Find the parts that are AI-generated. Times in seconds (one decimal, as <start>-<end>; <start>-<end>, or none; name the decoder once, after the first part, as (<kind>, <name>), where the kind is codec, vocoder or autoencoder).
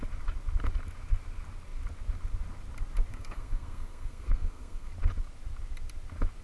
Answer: 3.1-4.9 (codec, SNAC)